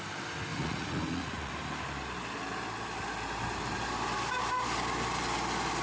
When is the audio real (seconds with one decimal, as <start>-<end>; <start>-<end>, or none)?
0.0-0.5; 1.5-5.8